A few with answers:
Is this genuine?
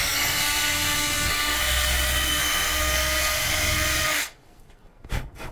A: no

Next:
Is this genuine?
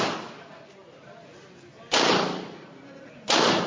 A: yes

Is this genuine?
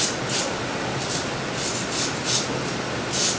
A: yes